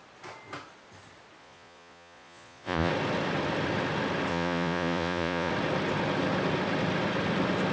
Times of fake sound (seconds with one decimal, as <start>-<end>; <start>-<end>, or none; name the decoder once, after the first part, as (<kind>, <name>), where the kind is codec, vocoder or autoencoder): 1.4-2.9 (vocoder, Vocos); 4.3-5.5